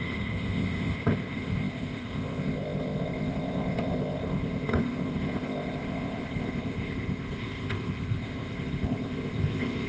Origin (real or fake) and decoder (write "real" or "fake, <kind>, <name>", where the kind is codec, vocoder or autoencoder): fake, codec, ZipCodec